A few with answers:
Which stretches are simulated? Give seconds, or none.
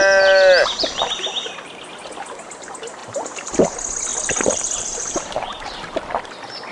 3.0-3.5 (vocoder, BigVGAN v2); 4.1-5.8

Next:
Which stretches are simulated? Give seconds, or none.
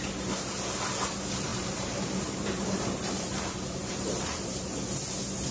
1.5-4.8 (vocoder, BigVGAN v2)